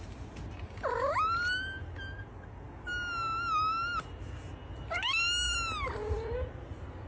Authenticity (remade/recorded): recorded